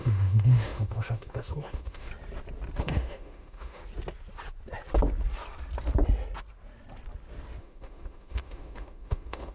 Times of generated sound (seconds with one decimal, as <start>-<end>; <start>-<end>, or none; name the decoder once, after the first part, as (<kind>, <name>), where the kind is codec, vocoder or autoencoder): 0.0-2.1 (autoencoder, DAC-VAE); 2.8-3.8; 7.6-9.5